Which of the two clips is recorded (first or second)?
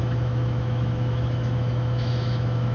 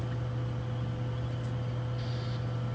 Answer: second